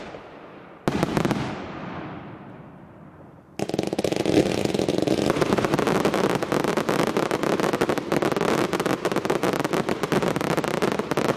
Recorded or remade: recorded